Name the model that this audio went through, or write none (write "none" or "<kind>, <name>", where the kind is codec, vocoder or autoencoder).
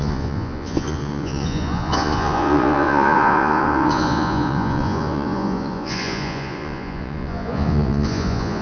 vocoder, Vocos